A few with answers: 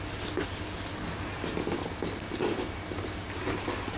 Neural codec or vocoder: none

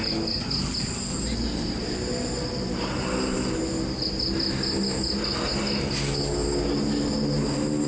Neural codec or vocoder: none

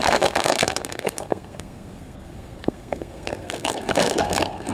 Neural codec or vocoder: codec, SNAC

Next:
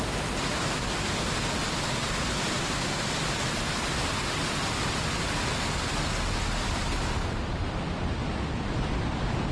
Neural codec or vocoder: none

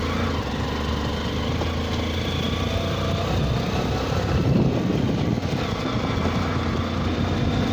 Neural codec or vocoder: none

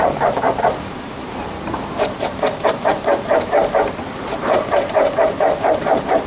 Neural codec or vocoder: vocoder, BigVGAN v2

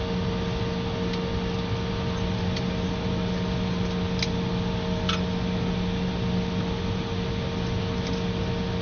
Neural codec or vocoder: none